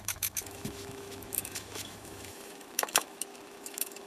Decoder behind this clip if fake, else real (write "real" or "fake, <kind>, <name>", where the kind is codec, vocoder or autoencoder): fake, autoencoder, DAC-VAE